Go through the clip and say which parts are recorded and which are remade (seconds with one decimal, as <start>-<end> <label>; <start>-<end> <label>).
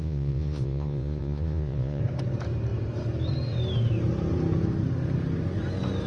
0.0-2.0 remade; 2.0-6.1 recorded